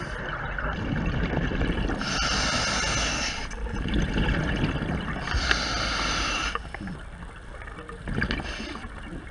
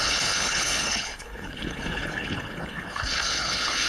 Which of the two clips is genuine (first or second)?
first